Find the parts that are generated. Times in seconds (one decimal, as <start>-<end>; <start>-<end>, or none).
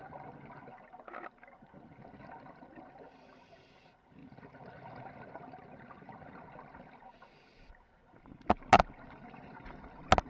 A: none